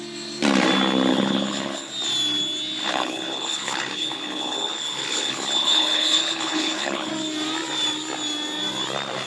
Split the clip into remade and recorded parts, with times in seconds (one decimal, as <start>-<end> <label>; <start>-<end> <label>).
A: 0.0-1.1 recorded; 1.1-1.9 remade; 1.9-2.8 recorded; 2.8-7.1 remade; 7.1-9.3 recorded